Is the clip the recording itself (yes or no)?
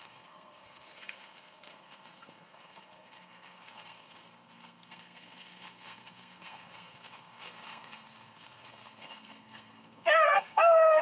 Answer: no